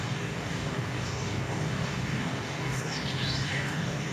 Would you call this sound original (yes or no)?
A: no